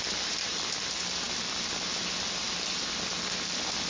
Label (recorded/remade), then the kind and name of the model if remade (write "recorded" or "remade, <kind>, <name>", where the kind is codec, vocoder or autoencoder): recorded